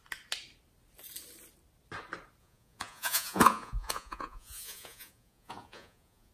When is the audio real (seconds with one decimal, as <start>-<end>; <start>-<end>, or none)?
0.0-2.4